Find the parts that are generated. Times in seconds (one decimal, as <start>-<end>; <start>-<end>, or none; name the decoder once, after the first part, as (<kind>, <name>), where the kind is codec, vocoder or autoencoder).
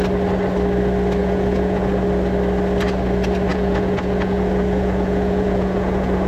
1.2-1.9 (vocoder, Vocos); 3.5-6.3